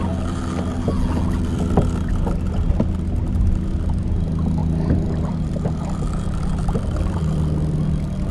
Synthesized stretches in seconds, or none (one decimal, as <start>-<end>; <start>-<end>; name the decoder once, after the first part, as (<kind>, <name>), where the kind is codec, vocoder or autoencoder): 4.6-7.8 (vocoder, BigVGAN v2)